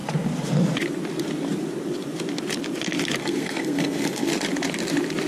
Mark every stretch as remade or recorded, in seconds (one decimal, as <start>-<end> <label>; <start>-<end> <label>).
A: 0.0-3.2 recorded; 3.2-4.3 remade; 4.3-5.3 recorded

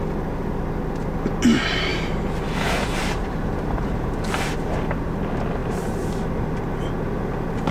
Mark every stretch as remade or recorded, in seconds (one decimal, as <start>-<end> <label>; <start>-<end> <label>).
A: 0.0-1.9 recorded; 1.9-4.5 remade; 4.5-5.6 recorded; 5.6-6.5 remade; 6.5-7.7 recorded

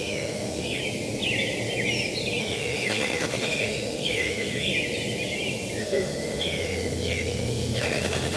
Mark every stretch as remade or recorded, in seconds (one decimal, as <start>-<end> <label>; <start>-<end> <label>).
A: 0.0-0.8 remade; 0.8-2.4 recorded; 2.4-4.7 remade; 4.7-5.8 recorded; 5.8-8.4 remade

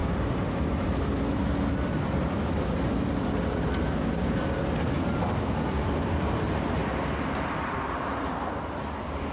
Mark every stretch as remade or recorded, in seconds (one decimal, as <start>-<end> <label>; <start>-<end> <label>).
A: 0.0-6.8 remade; 6.8-7.6 recorded; 7.6-9.3 remade

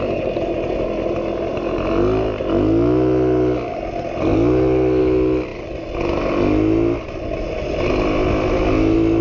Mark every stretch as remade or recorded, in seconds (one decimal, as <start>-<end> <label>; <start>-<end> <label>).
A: 0.0-9.2 recorded

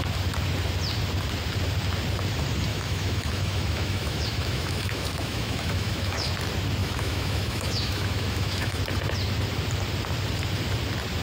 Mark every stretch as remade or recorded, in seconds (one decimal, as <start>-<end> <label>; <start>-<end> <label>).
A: 0.0-2.7 recorded; 2.7-6.3 remade; 6.3-6.8 recorded; 6.8-8.8 remade; 8.8-11.2 recorded